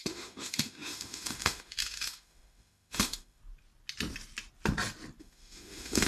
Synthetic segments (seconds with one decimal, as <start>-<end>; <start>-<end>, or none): 0.0-3.4; 5.2-6.1